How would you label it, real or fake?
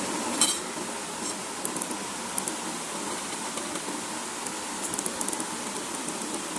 real